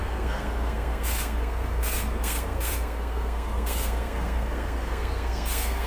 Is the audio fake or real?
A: fake